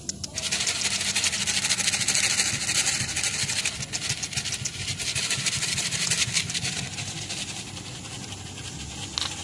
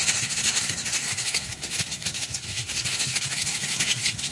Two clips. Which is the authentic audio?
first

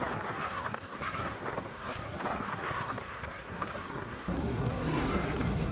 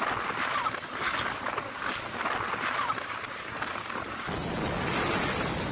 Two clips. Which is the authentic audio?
second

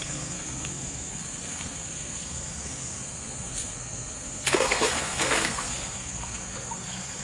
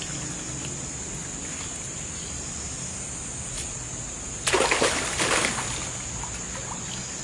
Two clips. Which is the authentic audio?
second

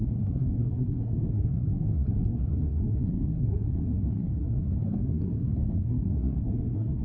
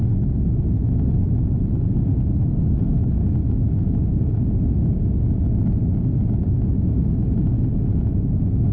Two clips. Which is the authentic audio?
second